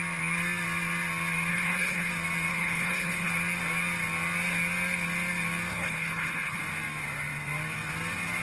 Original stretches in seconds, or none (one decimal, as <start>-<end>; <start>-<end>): 0.0-1.5; 2.1-2.5; 3.3-5.7; 6.6-8.4